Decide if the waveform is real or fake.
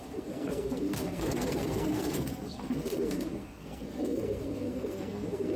fake